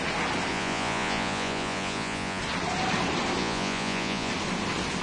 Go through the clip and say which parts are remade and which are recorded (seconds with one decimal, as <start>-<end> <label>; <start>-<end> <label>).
0.0-0.5 recorded; 0.5-2.4 remade; 2.4-3.4 recorded; 3.4-4.3 remade; 4.3-5.0 recorded

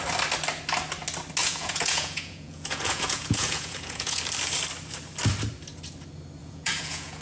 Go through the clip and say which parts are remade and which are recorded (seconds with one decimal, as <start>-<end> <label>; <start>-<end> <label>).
0.0-1.4 recorded; 1.4-4.2 remade; 4.2-6.4 recorded; 6.4-7.2 remade

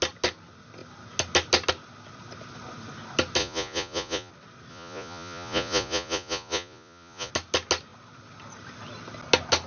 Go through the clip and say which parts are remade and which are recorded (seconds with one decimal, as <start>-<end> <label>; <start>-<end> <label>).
0.0-3.4 recorded; 3.4-4.3 remade; 4.3-4.7 recorded; 4.7-7.3 remade; 7.3-9.7 recorded

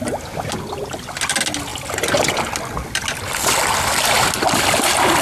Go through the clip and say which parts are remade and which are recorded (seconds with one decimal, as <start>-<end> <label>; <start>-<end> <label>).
0.0-5.2 recorded

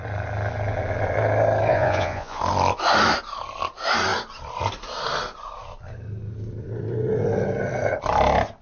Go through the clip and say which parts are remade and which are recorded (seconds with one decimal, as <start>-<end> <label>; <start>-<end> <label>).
0.0-1.7 recorded; 1.7-2.4 remade; 2.4-8.6 recorded